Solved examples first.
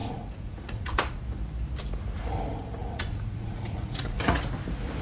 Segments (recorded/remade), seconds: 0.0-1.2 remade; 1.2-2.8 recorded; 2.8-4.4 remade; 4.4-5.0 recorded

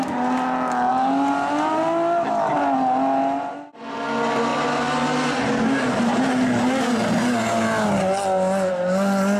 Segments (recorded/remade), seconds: 0.0-9.4 recorded

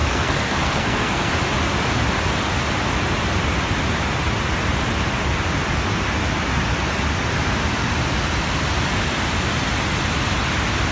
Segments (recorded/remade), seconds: 0.0-1.3 remade; 1.3-10.9 recorded

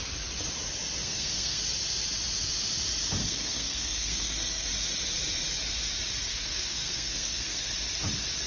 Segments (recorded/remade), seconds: 0.0-1.0 recorded; 1.0-1.6 remade; 1.6-3.2 recorded; 3.2-4.7 remade; 4.7-6.3 recorded; 6.3-7.7 remade; 7.7-8.5 recorded

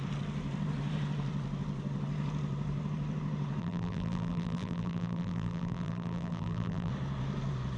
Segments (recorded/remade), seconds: 0.0-3.6 recorded; 3.6-6.9 remade; 6.9-7.8 recorded

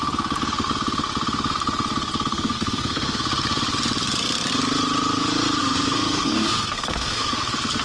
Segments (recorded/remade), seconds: 0.0-2.3 recorded; 2.3-3.2 remade; 3.2-5.6 recorded; 5.6-7.3 remade; 7.3-7.8 recorded

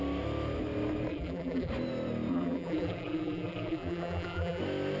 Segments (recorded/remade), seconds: 0.0-1.1 recorded; 1.1-1.7 remade; 1.7-2.3 recorded; 2.3-4.6 remade; 4.6-5.0 recorded